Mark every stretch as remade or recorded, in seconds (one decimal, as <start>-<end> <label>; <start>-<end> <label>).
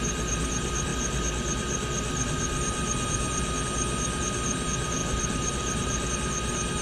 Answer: 0.0-5.0 recorded; 5.0-6.1 remade; 6.1-6.8 recorded